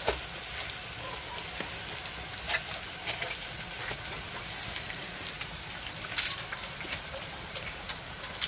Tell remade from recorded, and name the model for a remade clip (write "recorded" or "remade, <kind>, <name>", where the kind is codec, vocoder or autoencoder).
recorded